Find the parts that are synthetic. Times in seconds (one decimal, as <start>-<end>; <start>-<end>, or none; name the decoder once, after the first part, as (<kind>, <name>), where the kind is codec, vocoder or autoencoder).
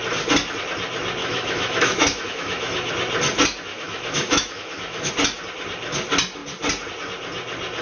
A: 1.2-2.9 (autoencoder, DAC-VAE); 3.7-5.1